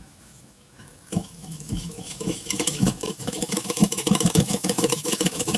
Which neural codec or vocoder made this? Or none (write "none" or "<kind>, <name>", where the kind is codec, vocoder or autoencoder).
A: autoencoder, DAC-VAE